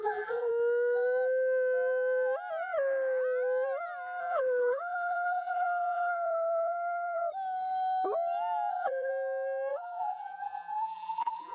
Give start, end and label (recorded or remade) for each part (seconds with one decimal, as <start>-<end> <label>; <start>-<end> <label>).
0.0-0.5 remade; 0.5-4.2 recorded; 4.2-7.2 remade; 7.2-8.7 recorded; 8.7-9.1 remade; 9.1-9.7 recorded; 9.7-11.5 remade

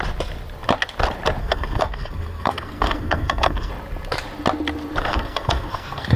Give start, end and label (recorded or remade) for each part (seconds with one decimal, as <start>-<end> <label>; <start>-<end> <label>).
0.0-1.4 recorded; 1.4-3.7 remade; 3.7-5.0 recorded; 5.0-6.2 remade

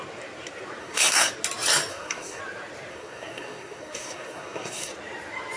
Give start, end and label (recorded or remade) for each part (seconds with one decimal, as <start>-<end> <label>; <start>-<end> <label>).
0.0-0.8 recorded; 0.8-1.3 remade; 1.3-1.9 recorded; 1.9-2.4 remade; 2.4-2.9 recorded; 2.9-4.9 remade; 4.9-5.6 recorded

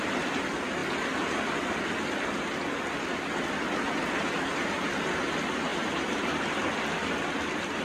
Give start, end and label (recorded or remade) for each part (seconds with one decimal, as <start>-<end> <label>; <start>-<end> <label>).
0.0-0.8 recorded; 0.8-1.8 remade; 1.8-5.7 recorded; 5.7-7.8 remade

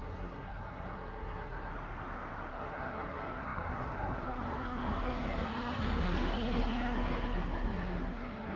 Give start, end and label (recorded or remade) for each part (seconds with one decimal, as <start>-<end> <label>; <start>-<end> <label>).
0.0-1.7 remade; 1.7-2.5 recorded; 2.5-8.6 remade

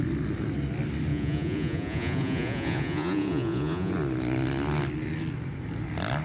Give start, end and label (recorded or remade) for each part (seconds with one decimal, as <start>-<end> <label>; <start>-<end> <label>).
0.0-1.1 recorded; 1.1-3.9 remade; 3.9-6.2 recorded

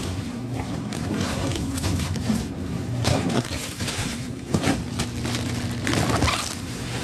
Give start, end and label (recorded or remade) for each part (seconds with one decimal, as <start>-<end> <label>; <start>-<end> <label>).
0.0-4.8 remade; 4.8-6.6 recorded; 6.6-7.0 remade

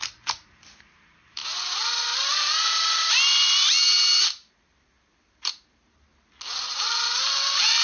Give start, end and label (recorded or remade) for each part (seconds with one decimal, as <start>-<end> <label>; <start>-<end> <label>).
0.0-1.4 remade; 1.4-4.5 recorded; 4.5-6.1 remade; 6.1-6.7 recorded; 6.7-7.8 remade